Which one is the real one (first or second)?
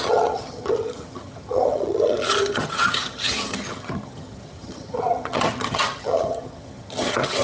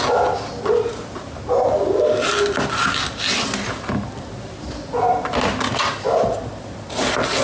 second